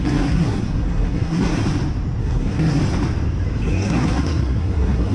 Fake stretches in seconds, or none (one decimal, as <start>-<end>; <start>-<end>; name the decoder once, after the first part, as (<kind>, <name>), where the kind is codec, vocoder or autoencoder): 0.0-1.6 (codec, SNAC); 2.2-2.8; 3.6-5.1